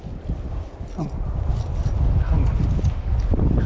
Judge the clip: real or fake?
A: real